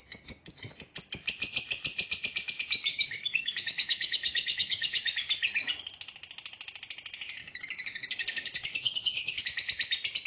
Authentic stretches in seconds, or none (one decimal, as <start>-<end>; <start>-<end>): 0.0-2.9; 5.1-7.4; 9.4-10.3